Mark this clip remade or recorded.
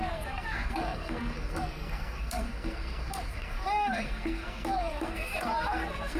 remade